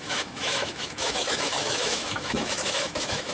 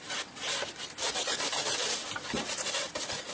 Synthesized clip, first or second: first